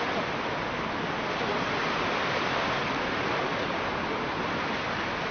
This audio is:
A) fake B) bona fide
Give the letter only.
B